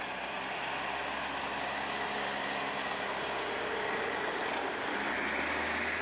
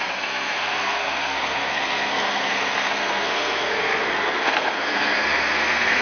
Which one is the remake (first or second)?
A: second